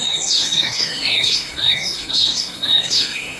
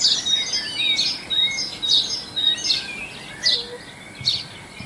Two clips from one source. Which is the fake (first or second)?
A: first